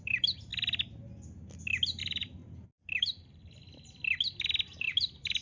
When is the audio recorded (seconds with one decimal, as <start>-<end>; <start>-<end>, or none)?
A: 0.5-2.0; 2.4-3.0; 3.4-4.8